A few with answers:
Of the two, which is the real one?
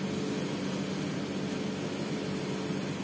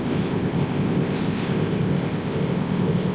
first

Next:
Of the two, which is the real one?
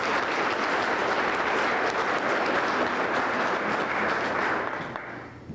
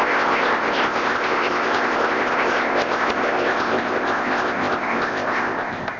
first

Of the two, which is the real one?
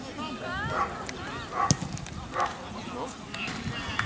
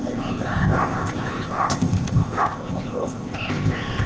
first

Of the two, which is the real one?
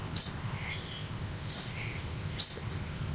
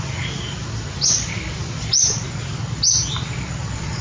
second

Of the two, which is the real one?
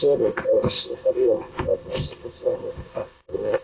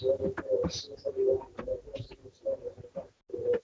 second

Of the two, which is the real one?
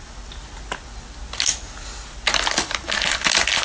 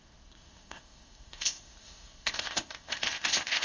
first